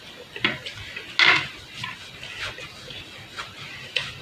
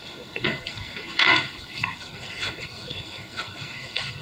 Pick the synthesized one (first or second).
second